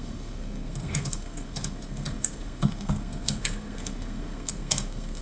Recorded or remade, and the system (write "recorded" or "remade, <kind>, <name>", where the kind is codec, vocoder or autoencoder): remade, codec, SNAC